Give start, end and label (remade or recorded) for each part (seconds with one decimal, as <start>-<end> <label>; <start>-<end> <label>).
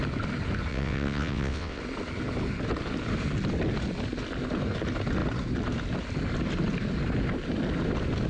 0.0-0.7 recorded; 0.7-1.8 remade; 1.8-8.3 recorded